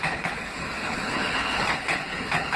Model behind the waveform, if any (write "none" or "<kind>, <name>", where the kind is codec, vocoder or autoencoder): codec, HILCodec